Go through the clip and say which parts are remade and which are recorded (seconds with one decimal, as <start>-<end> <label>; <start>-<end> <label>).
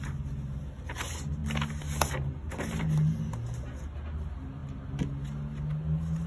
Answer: 0.0-6.3 recorded